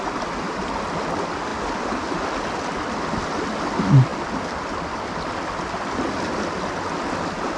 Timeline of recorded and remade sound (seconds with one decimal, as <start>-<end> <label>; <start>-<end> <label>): 0.0-7.6 recorded